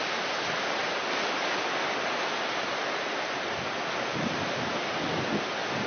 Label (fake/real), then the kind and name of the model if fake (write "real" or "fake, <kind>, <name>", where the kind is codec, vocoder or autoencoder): real